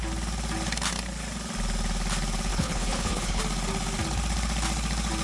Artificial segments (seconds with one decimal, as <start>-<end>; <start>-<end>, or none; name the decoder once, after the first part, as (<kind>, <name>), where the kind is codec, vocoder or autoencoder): 2.5-3.4 (codec, HILCodec)